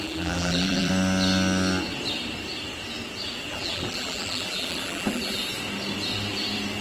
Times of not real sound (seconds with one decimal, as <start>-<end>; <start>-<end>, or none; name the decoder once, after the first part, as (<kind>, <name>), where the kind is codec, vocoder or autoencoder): 0.0-0.9 (vocoder, BigVGAN v2); 3.5-5.4